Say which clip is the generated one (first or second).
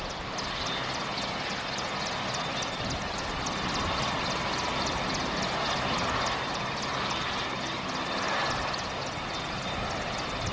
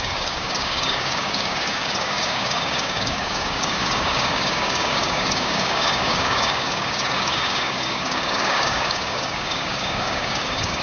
second